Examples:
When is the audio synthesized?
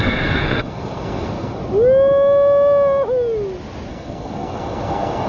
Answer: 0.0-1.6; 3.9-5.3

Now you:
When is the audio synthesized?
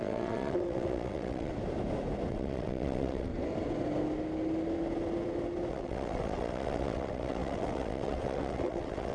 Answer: 0.0-1.5; 2.3-3.3; 5.7-9.1